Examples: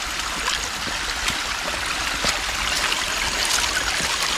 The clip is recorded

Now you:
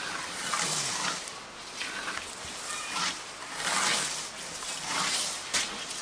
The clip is recorded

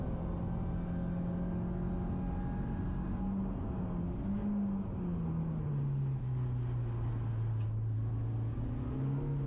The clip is recorded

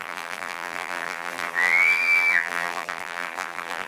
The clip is remade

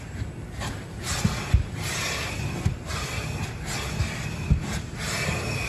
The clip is recorded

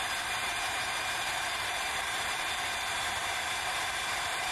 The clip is remade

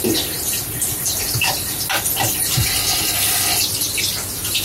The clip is recorded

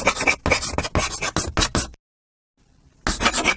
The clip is recorded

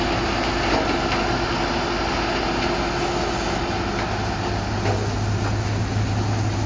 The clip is recorded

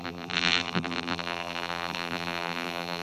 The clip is remade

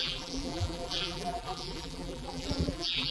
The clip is remade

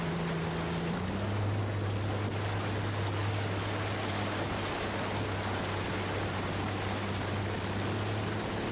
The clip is recorded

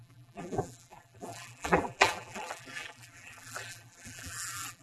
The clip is remade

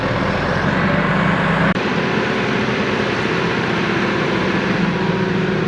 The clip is remade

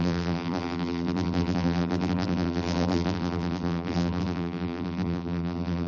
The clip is remade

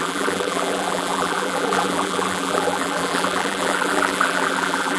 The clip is remade